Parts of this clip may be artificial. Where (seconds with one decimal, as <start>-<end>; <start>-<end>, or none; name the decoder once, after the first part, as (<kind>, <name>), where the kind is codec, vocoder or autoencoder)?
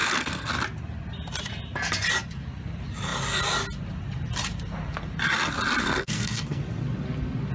0.0-0.5 (codec, SNAC); 5.8-6.6